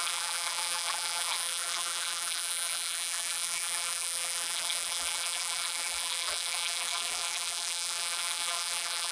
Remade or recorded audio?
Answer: remade